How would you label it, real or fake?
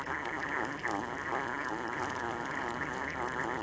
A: real